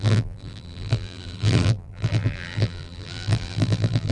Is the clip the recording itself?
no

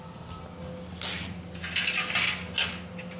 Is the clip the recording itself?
yes